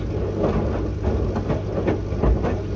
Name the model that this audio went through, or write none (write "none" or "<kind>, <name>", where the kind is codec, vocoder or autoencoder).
none